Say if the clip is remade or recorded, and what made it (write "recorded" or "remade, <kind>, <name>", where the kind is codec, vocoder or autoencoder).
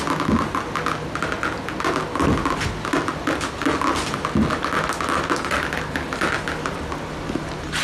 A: recorded